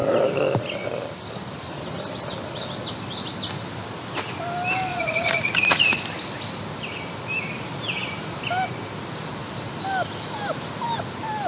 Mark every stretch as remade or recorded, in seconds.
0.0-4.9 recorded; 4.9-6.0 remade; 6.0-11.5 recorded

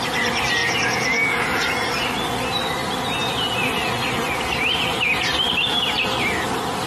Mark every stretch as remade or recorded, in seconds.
0.0-0.6 recorded; 0.6-1.9 remade; 1.9-6.9 recorded

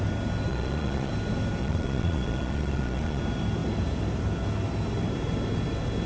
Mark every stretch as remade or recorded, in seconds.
0.0-0.5 recorded; 0.5-1.1 remade; 1.1-1.6 recorded; 1.6-3.2 remade; 3.2-6.1 recorded

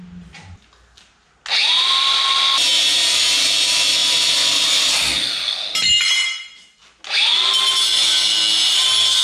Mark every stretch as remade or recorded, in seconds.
0.0-9.2 recorded

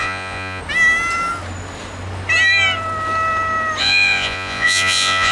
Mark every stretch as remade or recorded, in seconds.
0.0-0.6 remade; 0.6-3.8 recorded; 3.8-5.3 remade

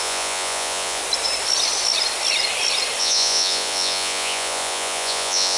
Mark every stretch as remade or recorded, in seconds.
0.0-1.0 remade; 1.0-3.0 recorded; 3.0-5.6 remade

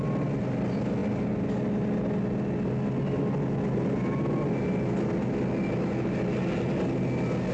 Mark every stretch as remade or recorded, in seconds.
0.0-7.5 recorded